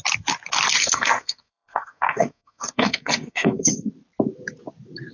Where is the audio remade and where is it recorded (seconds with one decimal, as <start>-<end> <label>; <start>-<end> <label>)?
0.0-0.8 recorded; 0.8-3.9 remade; 3.9-5.1 recorded